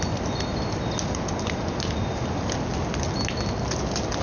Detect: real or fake real